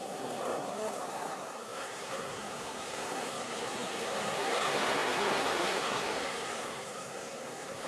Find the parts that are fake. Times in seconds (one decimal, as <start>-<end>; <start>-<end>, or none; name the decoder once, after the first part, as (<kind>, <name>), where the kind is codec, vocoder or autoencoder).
0.0-7.9 (codec, SNAC)